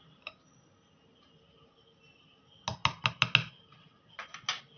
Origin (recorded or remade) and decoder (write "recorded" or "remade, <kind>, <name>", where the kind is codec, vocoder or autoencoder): recorded